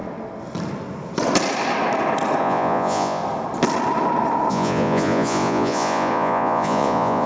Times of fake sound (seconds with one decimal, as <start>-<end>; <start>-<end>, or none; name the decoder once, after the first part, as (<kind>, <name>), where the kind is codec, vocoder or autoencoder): 2.4-3.2 (vocoder, Vocos); 4.5-7.3